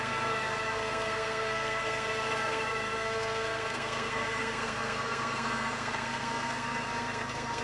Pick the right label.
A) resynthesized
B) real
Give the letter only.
A